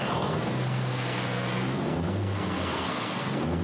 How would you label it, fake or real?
fake